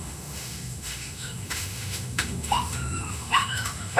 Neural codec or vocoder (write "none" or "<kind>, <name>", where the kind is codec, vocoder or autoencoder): autoencoder, DAC-VAE